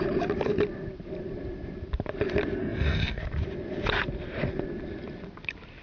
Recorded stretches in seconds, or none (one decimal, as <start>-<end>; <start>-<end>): 0.0-2.6; 3.2-5.8